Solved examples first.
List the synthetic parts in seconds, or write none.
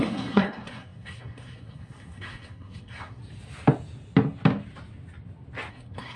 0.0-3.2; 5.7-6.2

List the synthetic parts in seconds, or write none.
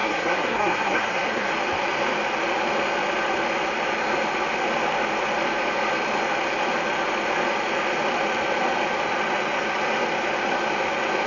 0.0-1.5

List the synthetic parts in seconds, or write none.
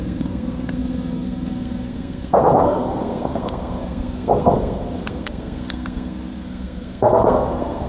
0.0-7.9